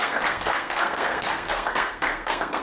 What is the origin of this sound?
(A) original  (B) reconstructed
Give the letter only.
B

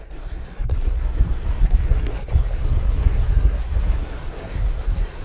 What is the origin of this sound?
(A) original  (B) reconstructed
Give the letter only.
B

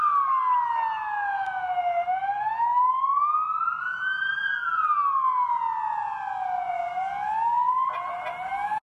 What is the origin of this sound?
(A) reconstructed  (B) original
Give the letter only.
B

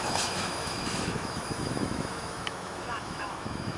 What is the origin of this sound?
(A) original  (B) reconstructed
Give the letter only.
B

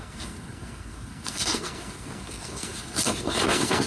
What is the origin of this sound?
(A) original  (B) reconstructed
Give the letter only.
B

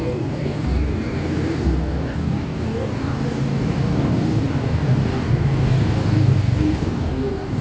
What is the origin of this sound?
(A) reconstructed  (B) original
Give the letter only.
A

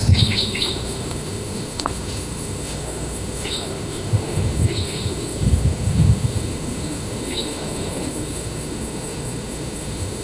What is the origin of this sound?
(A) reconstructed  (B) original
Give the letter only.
A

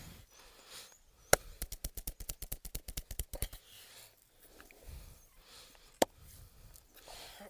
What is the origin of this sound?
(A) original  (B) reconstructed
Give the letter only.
A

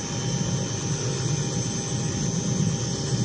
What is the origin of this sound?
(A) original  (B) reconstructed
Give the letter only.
A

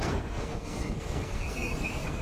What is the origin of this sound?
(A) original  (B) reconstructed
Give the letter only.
B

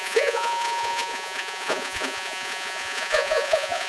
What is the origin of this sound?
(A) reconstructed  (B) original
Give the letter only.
A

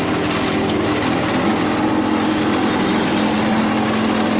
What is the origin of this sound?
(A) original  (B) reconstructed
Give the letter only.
A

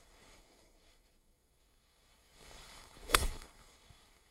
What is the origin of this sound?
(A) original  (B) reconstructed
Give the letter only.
B